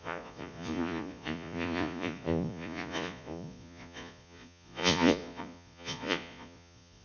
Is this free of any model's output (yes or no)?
no